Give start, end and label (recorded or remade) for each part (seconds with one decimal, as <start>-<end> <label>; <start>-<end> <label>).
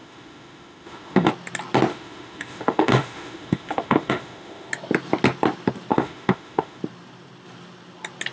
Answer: 0.0-1.3 remade; 1.3-1.9 recorded; 1.9-4.7 remade; 4.7-5.9 recorded; 5.9-6.8 remade; 6.8-8.3 recorded